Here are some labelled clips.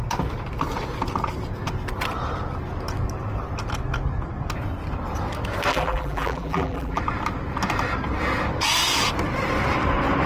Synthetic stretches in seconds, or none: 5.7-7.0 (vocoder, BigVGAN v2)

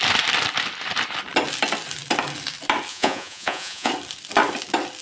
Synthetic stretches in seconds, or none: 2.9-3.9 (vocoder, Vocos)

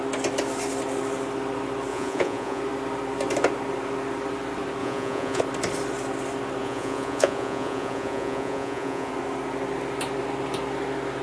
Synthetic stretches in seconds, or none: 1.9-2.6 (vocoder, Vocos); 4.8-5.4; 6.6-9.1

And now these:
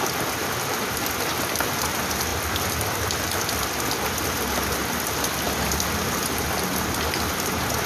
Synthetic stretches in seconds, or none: none